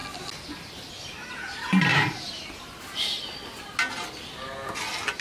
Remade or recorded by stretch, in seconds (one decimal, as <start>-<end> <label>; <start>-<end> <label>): 0.0-1.9 recorded; 1.9-2.7 remade; 2.7-5.2 recorded